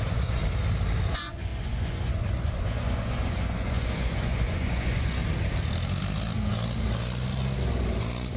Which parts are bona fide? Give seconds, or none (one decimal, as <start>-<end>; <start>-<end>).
0.4-1.1; 5.2-8.4